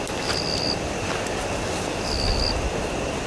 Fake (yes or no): no